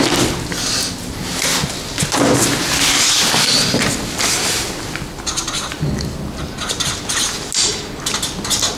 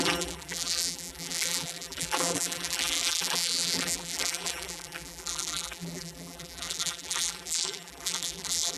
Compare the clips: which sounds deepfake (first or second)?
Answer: second